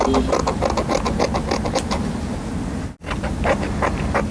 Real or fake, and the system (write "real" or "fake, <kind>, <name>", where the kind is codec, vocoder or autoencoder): real